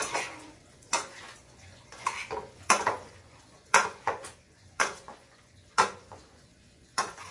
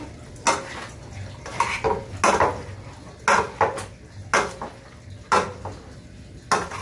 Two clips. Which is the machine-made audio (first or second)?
first